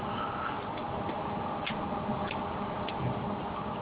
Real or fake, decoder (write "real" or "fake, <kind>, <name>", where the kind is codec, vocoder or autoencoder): real